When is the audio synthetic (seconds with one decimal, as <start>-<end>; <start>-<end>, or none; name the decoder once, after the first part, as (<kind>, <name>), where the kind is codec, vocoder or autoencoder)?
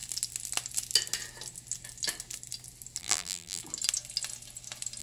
3.0-3.6 (vocoder, BigVGAN v2)